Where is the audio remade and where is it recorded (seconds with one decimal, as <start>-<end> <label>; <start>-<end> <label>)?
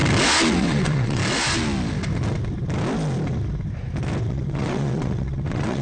0.0-0.5 recorded; 0.5-1.2 remade; 1.2-4.2 recorded; 4.2-5.8 remade